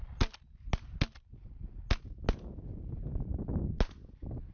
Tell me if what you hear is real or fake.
real